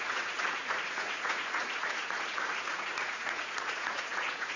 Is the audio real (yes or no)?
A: no